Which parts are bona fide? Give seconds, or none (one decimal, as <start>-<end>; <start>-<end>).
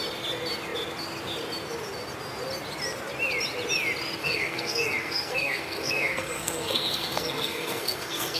0.0-4.2